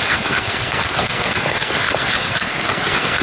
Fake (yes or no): yes